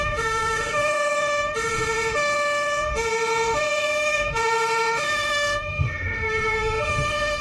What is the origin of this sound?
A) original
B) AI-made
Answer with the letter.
B